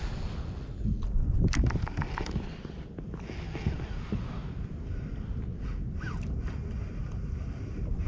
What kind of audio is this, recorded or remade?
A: recorded